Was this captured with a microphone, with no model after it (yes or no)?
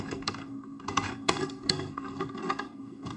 no